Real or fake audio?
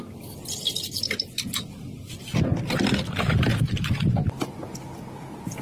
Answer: real